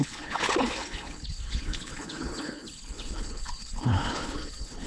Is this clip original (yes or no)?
no